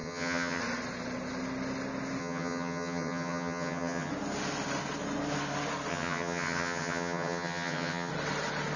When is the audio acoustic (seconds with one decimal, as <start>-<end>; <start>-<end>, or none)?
0.6-2.2; 4.1-5.9; 8.1-8.8